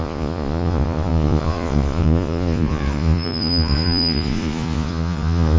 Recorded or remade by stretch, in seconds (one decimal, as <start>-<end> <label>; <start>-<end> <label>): 0.0-5.6 remade